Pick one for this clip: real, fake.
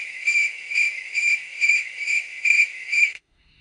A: fake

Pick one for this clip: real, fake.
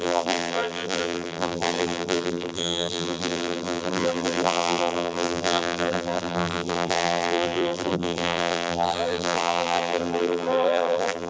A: fake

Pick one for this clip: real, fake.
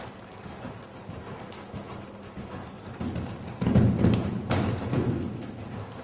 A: real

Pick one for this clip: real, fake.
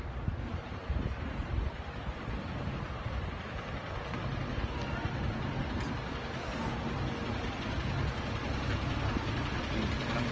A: real